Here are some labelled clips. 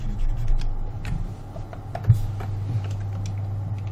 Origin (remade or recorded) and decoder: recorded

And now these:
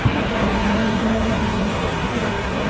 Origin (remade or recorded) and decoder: remade, codec, SNAC